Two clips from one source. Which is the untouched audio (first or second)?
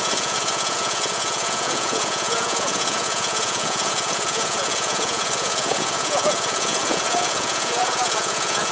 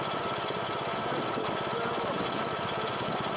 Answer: second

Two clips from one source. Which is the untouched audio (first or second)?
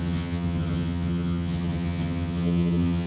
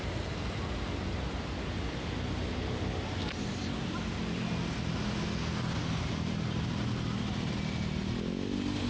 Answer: second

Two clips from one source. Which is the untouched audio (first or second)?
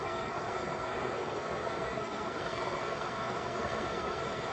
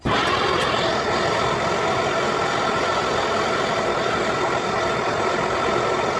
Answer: second